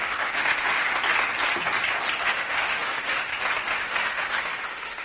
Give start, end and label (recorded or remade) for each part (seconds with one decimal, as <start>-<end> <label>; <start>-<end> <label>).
0.0-0.9 remade; 0.9-2.1 recorded; 2.1-3.3 remade; 3.3-3.8 recorded; 3.8-5.0 remade